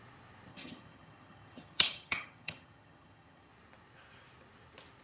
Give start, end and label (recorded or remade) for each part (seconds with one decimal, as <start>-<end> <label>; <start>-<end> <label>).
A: 0.0-0.5 recorded; 0.5-3.5 remade; 3.5-5.0 recorded

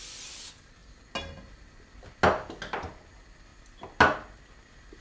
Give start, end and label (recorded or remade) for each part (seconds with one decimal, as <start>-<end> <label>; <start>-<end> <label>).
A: 0.0-5.0 recorded

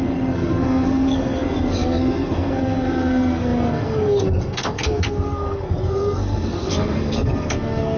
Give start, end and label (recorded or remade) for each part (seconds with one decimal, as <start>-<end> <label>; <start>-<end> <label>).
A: 0.0-8.0 remade

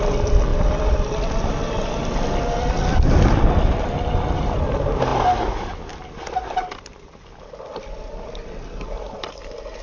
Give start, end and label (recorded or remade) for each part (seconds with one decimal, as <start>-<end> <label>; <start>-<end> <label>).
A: 0.0-9.8 recorded

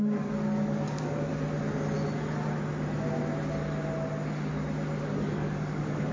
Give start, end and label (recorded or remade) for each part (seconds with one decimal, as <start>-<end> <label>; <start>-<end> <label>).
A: 0.0-1.3 remade; 1.3-5.0 recorded; 5.0-6.1 remade

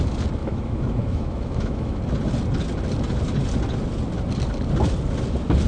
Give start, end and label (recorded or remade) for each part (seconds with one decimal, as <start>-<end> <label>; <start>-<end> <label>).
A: 0.0-0.4 recorded; 0.4-2.0 remade; 2.0-5.7 recorded